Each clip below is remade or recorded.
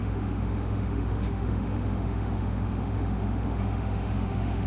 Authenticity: remade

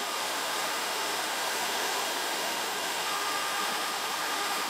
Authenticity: remade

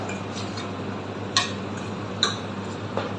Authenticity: recorded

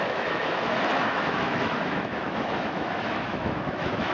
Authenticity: remade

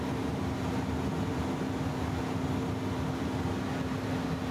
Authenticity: recorded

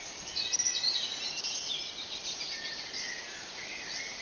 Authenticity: recorded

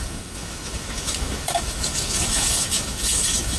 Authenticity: remade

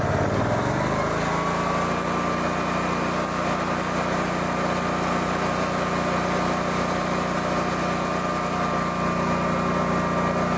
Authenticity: recorded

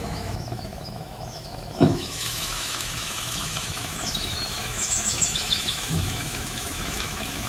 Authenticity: remade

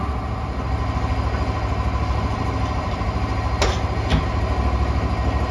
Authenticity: recorded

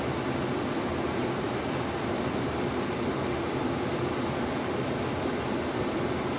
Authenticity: recorded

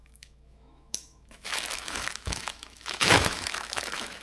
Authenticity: remade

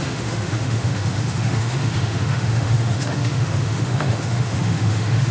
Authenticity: remade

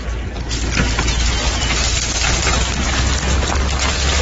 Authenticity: recorded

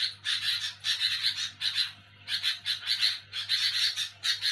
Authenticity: recorded